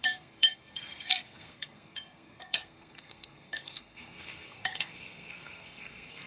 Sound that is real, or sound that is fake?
fake